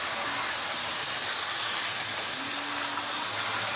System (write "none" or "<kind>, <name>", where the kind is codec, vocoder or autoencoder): none